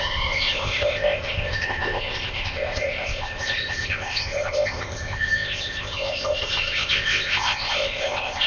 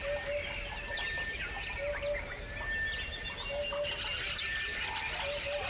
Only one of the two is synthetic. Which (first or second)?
first